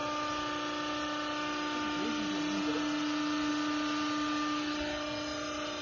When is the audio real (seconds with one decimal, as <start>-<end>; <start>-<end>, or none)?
0.0-5.8